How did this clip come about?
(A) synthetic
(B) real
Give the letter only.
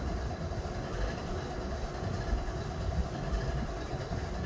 B